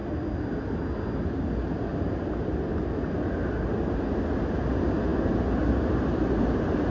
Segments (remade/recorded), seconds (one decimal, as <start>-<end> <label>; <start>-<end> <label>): 0.0-1.9 recorded; 1.9-2.6 remade; 2.6-6.9 recorded